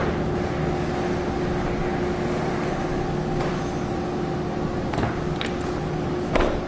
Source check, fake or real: real